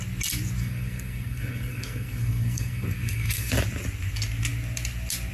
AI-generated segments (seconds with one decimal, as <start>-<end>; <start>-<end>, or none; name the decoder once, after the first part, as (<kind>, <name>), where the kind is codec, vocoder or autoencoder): 0.6-3.5 (codec, SNAC)